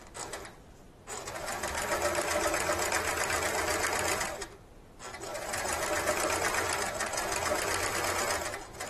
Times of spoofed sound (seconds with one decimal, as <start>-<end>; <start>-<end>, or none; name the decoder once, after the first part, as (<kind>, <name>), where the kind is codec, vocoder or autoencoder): none